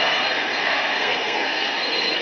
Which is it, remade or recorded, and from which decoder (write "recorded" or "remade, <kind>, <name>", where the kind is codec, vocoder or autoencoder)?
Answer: remade, codec, SNAC